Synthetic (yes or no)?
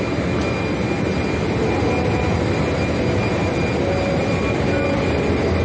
no